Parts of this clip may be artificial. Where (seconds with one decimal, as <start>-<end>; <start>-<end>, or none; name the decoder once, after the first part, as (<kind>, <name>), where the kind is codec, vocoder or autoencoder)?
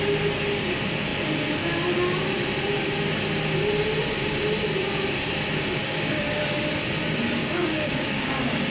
5.8-6.6 (codec, DAC); 7.4-8.7